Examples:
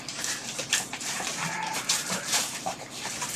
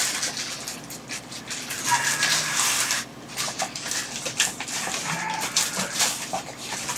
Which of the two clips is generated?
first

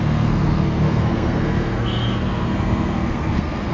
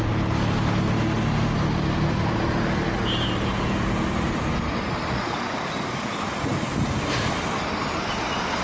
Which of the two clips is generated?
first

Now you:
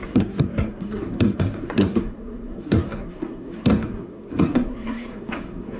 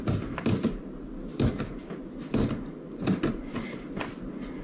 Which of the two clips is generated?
first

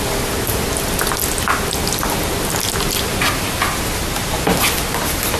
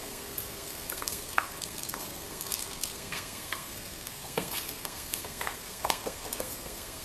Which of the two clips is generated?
second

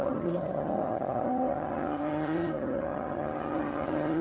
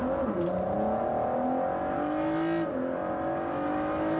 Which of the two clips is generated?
first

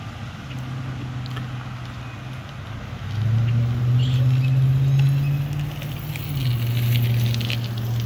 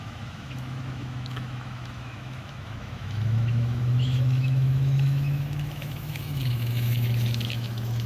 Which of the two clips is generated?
second